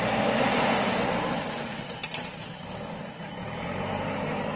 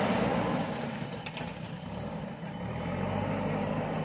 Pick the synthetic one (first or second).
second